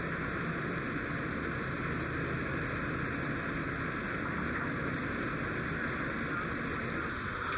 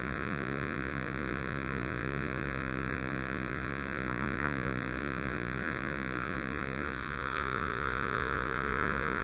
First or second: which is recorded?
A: first